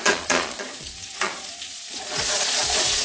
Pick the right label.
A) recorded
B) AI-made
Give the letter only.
B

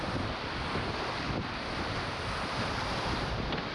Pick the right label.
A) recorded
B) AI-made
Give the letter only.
A